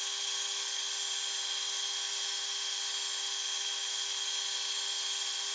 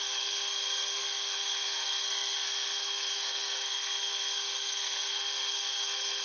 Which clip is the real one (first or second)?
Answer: first